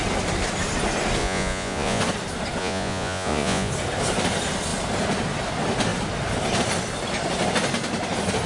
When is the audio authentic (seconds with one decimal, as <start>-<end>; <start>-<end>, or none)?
0.0-1.2; 2.0-2.6; 3.7-8.5